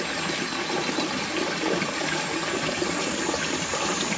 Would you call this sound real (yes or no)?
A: yes